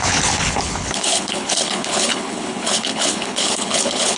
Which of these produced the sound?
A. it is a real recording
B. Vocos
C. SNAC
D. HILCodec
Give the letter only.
D